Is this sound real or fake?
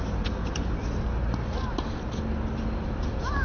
real